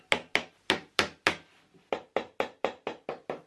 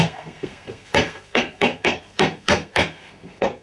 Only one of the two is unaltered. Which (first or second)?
first